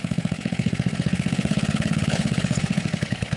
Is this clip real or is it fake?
fake